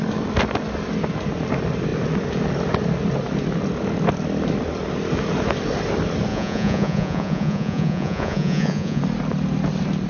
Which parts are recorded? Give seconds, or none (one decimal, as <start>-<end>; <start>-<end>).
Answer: 0.0-6.3; 9.0-10.1